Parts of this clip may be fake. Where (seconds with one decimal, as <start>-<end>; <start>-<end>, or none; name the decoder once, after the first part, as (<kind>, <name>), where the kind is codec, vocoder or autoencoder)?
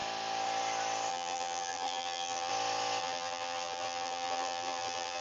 1.1-2.5 (vocoder, BigVGAN v2); 3.0-5.2